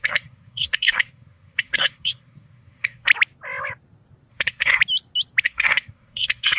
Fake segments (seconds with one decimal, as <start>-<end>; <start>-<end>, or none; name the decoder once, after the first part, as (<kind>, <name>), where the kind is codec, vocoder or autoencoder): 0.0-3.1 (codec, SNAC); 4.3-4.8; 5.4-6.6